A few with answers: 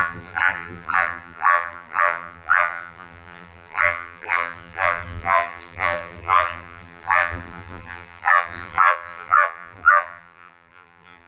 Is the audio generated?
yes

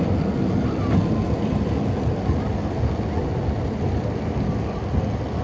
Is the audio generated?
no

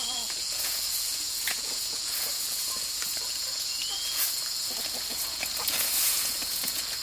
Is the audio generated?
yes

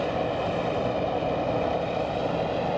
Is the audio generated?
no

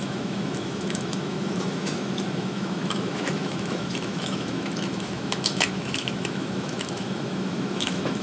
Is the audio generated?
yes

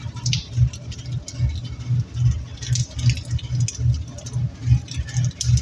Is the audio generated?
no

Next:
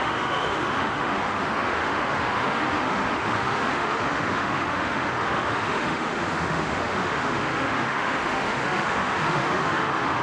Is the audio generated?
yes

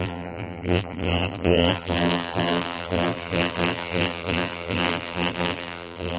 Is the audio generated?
yes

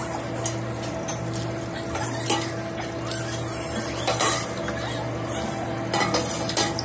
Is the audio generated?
no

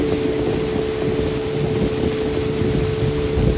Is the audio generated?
no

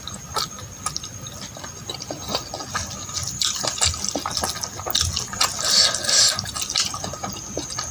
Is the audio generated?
no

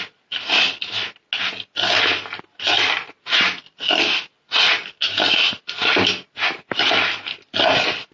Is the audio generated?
no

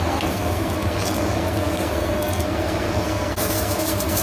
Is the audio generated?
yes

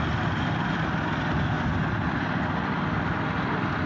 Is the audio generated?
no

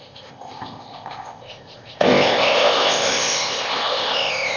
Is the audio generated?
yes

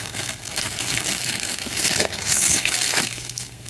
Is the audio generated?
yes